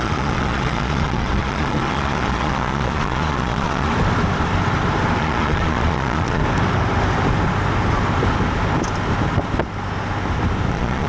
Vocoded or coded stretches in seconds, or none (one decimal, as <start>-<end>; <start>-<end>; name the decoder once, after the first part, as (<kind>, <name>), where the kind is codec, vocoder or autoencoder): 0.0-3.9 (vocoder, Vocos); 5.2-6.4; 10.7-11.1